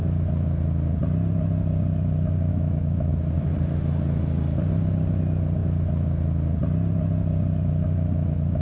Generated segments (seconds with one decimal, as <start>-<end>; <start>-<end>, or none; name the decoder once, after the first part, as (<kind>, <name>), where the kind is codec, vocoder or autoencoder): 2.5-3.1 (autoencoder, DAC-VAE)